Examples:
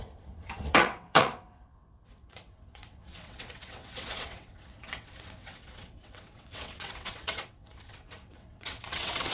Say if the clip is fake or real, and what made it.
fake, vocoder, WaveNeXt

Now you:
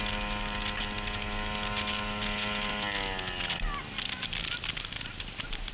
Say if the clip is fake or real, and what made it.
real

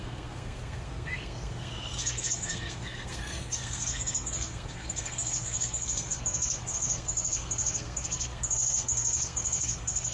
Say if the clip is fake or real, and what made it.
fake, codec, SNAC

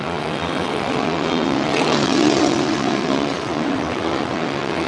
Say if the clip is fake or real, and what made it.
fake, vocoder, WaveNeXt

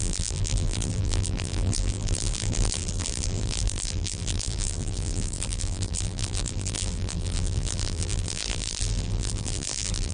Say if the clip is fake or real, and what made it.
fake, vocoder, BigVGAN v2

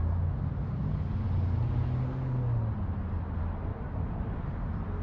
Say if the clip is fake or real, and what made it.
real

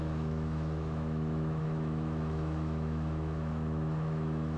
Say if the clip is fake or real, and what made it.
fake, autoencoder, DAC-VAE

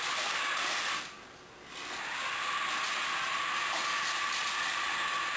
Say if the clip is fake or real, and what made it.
real